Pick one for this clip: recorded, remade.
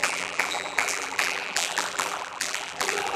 remade